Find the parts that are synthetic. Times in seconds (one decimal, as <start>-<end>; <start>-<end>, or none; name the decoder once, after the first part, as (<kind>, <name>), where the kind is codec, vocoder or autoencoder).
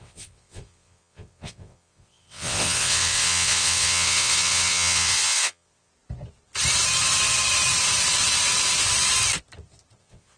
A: 0.0-5.9 (vocoder, WaveNeXt); 10.0-10.4